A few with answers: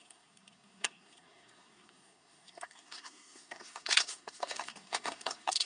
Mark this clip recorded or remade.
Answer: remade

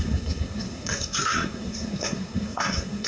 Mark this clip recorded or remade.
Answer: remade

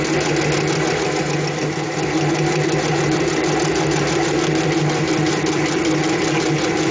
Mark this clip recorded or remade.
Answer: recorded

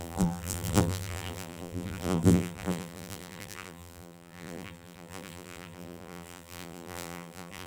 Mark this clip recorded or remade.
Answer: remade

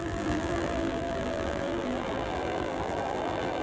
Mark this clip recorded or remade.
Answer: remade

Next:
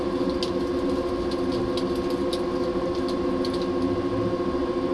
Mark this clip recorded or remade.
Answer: recorded